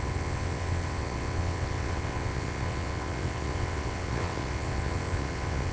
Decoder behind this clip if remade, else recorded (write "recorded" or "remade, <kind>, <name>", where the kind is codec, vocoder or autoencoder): remade, vocoder, WaveNeXt